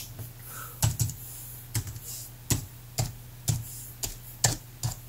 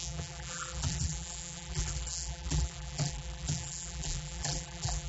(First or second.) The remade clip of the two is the second